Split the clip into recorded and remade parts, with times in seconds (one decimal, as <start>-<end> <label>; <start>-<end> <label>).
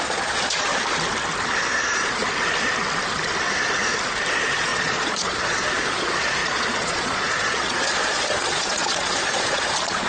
0.0-0.7 remade; 0.7-1.8 recorded; 1.8-2.2 remade; 2.2-4.3 recorded; 4.3-10.1 remade